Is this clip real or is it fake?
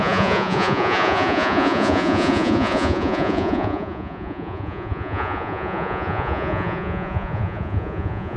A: fake